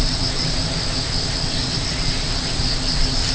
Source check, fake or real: real